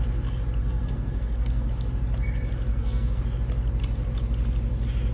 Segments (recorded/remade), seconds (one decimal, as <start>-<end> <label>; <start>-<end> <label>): 0.0-0.6 recorded; 0.6-1.7 remade; 1.7-2.7 recorded; 2.7-3.2 remade; 3.2-5.1 recorded